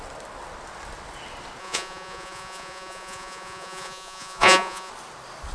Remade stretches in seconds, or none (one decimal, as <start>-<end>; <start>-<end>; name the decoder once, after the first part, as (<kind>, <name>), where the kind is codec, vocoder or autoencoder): 1.6-4.9 (vocoder, Vocos)